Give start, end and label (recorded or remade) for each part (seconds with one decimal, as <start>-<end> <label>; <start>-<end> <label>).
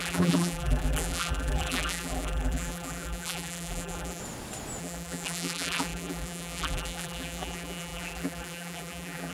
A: 0.0-4.2 remade; 4.2-4.8 recorded; 4.8-9.3 remade